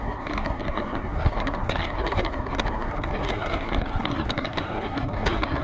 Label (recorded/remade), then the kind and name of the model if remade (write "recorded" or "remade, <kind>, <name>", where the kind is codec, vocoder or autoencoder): remade, codec, SNAC